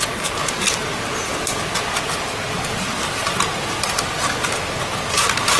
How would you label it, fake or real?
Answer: real